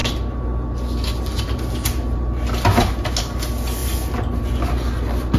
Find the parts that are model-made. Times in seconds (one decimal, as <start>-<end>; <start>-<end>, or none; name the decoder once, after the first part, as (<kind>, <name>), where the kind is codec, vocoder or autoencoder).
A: none